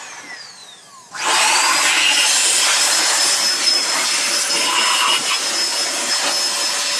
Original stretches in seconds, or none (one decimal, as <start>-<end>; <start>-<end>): 0.0-0.6; 4.5-7.0